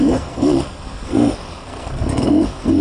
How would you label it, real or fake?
fake